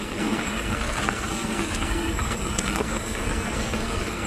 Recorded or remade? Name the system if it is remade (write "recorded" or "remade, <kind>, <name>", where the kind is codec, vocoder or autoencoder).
remade, codec, SNAC